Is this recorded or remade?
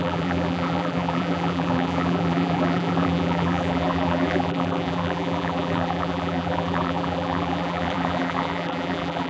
remade